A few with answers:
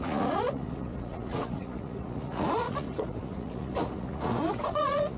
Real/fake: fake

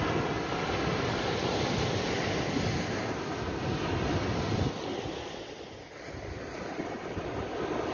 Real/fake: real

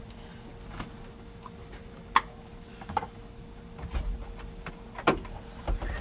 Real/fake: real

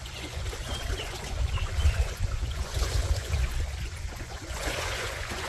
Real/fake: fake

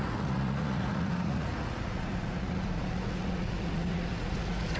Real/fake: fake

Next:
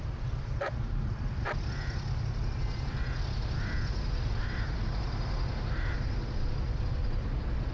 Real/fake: real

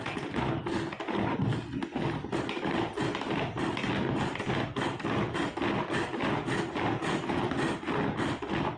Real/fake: real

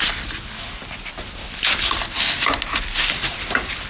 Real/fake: real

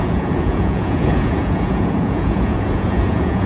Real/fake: fake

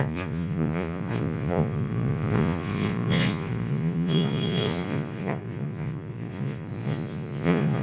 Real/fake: fake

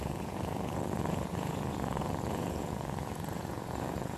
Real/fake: fake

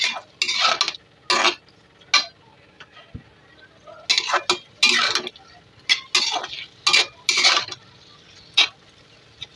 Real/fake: real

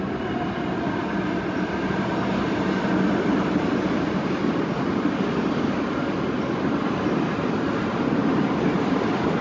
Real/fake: real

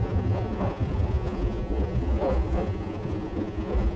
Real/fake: fake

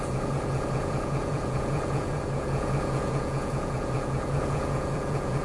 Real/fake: fake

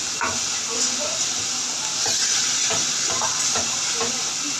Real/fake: real